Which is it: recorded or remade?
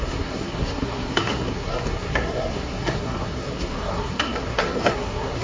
remade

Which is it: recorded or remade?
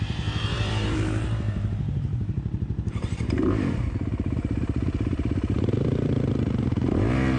remade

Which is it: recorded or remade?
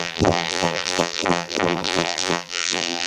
remade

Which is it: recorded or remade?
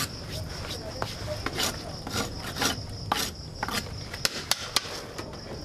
recorded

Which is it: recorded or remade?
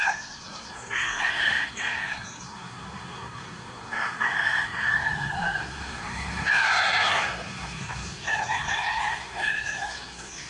remade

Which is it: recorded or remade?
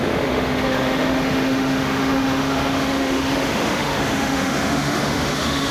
remade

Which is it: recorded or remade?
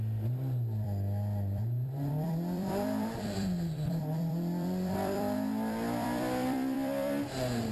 remade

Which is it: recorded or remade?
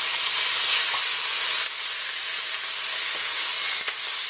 recorded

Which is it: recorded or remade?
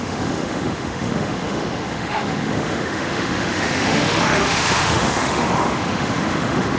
remade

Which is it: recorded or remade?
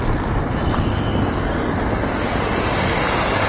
recorded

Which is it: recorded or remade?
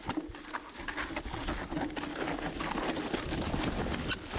recorded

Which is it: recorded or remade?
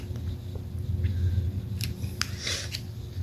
recorded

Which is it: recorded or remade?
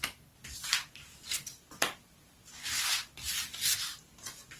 recorded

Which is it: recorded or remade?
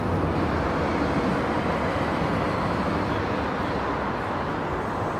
recorded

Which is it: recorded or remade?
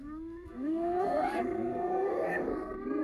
remade